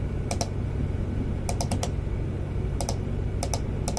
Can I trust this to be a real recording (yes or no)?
yes